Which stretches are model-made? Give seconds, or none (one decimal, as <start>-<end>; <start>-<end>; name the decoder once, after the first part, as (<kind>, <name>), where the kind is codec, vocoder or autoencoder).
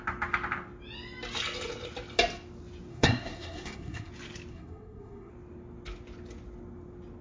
2.9-4.1 (codec, SNAC); 4.5-5.3